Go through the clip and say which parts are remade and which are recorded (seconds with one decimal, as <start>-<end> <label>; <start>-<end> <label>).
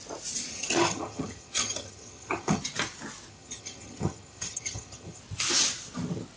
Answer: 0.0-0.5 recorded; 0.5-2.6 remade; 2.6-3.3 recorded; 3.3-5.2 remade; 5.2-6.4 recorded